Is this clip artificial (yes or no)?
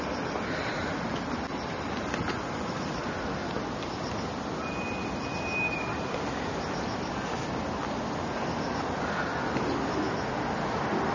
no